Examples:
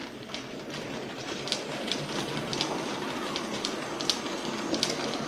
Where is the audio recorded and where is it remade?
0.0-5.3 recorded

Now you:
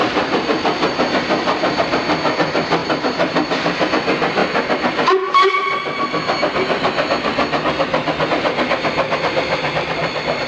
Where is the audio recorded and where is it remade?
0.0-1.9 remade; 1.9-2.8 recorded; 2.8-3.9 remade; 3.9-10.5 recorded

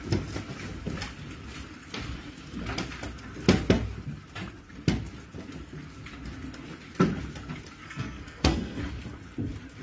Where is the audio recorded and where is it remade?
0.0-7.8 recorded; 7.8-8.8 remade; 8.8-9.8 recorded

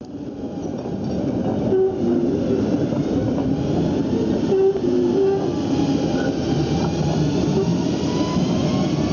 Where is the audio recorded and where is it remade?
0.0-9.1 recorded

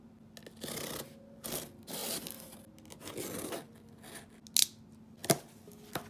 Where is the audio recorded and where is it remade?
0.0-6.1 recorded

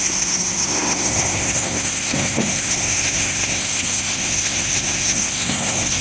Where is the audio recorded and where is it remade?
0.0-6.0 remade